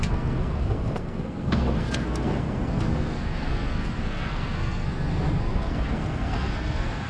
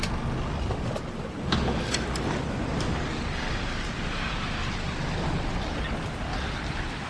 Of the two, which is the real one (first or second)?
second